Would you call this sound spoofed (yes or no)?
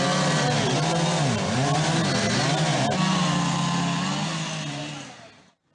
no